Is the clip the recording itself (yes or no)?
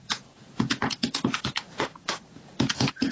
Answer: no